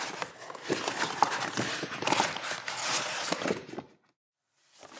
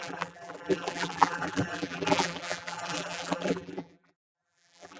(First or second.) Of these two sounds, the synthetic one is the second